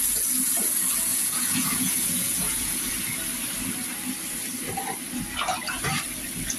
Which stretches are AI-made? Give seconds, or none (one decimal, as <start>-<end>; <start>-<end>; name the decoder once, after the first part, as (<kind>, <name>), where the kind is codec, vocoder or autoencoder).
1.1-2.8 (vocoder, Vocos)